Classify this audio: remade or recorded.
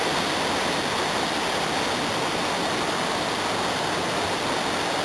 recorded